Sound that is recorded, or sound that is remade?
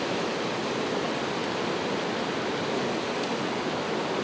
recorded